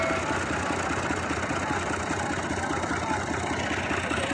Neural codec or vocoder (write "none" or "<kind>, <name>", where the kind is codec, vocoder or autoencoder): none